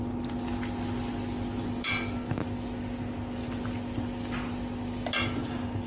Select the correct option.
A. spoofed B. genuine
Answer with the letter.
B